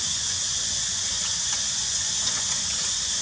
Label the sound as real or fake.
fake